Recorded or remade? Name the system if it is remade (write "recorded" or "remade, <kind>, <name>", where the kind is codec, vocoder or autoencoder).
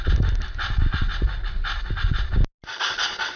recorded